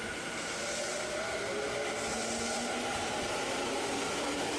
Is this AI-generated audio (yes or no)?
no